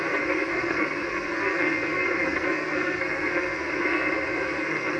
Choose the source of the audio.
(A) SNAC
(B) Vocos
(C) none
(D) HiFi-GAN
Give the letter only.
A